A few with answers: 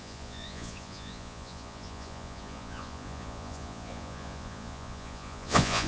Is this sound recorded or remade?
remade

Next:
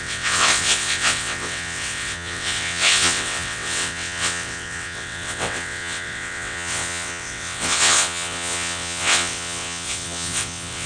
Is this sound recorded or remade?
remade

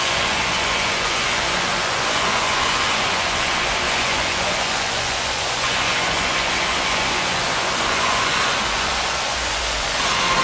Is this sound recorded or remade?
remade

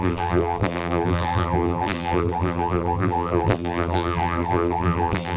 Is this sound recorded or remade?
remade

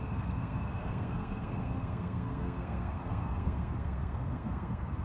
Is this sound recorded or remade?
remade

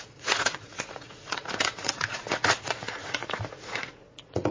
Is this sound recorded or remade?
remade